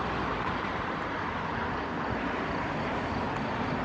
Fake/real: real